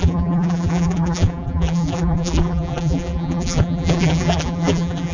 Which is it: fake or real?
fake